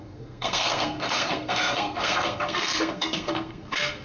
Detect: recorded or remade remade